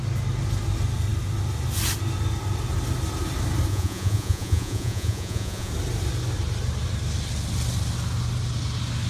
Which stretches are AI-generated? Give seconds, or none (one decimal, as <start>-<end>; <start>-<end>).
3.7-5.7